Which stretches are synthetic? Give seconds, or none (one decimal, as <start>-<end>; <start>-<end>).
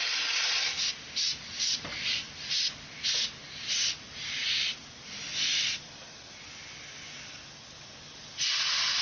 none